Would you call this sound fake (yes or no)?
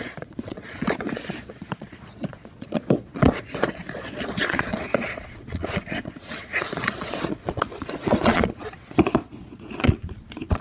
yes